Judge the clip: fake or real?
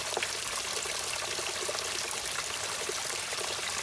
real